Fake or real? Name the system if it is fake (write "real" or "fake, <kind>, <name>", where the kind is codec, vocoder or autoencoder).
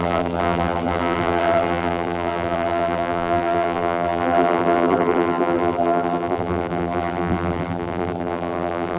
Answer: fake, vocoder, BigVGAN v2